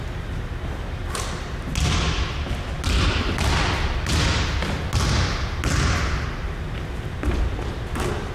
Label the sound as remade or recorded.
recorded